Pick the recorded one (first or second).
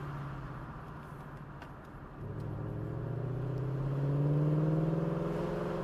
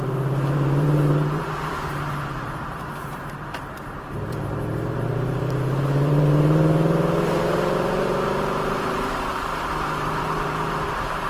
first